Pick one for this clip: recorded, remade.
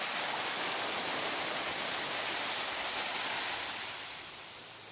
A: recorded